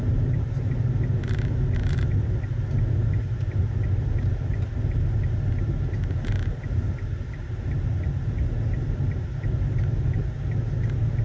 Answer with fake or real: real